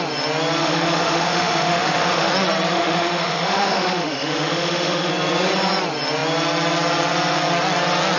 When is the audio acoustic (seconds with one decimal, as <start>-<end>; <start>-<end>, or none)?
0.0-0.6; 2.3-2.7; 5.1-8.2